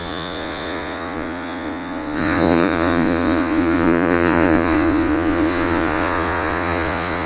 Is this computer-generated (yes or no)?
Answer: yes